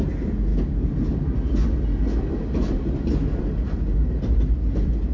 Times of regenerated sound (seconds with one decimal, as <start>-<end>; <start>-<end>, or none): none